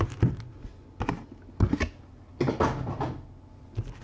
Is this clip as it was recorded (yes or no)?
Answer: yes